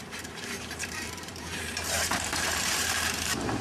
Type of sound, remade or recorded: remade